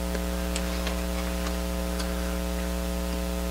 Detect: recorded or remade recorded